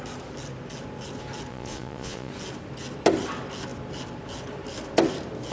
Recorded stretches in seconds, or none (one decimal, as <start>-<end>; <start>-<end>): 0.0-1.5; 2.3-5.5